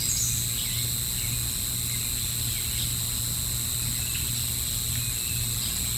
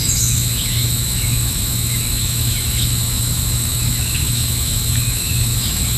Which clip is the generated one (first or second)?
second